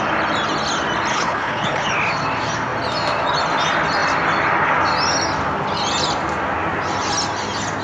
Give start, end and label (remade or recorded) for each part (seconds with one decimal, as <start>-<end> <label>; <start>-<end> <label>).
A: 0.0-1.1 recorded; 1.1-1.9 remade; 1.9-7.8 recorded

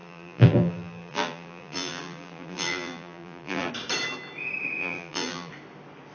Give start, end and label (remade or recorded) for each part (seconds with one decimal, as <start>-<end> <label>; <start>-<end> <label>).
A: 0.0-3.7 remade; 3.7-4.8 recorded; 4.8-5.5 remade; 5.5-6.1 recorded

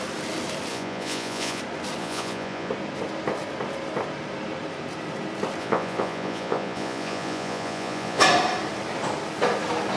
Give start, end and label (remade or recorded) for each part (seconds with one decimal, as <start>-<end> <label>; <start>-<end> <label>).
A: 0.0-0.7 recorded; 0.7-1.6 remade; 1.6-2.0 recorded; 2.0-2.7 remade; 2.7-5.6 recorded; 5.6-8.2 remade; 8.2-10.0 recorded

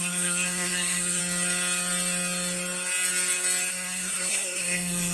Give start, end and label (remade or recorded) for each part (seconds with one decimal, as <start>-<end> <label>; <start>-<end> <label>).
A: 0.0-1.2 remade; 1.2-3.7 recorded; 3.7-5.1 remade

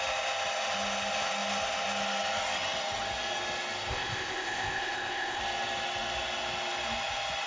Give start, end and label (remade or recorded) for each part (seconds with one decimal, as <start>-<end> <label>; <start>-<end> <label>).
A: 0.0-3.9 recorded; 3.9-5.4 remade; 5.4-7.5 recorded